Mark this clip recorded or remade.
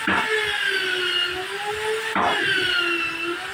recorded